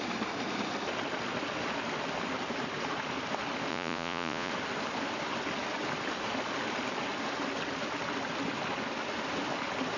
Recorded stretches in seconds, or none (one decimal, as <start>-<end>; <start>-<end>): 0.0-3.7; 4.5-10.0